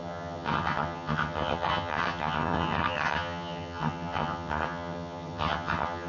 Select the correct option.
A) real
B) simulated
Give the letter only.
B